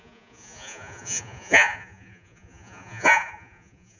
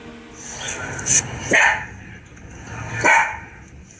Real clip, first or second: second